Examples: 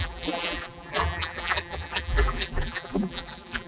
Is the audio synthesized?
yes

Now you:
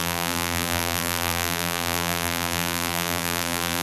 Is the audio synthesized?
yes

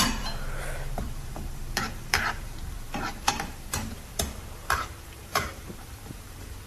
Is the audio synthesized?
yes